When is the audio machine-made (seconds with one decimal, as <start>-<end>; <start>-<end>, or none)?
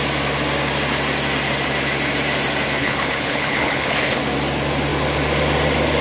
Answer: 2.8-4.2